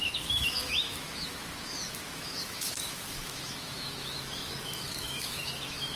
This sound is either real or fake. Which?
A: fake